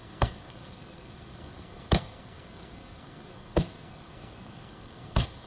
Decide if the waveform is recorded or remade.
remade